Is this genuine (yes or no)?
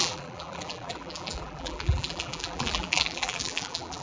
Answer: no